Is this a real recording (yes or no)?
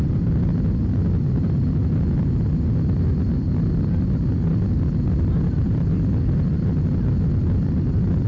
yes